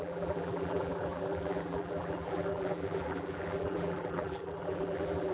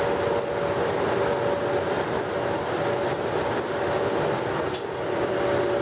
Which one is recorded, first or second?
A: second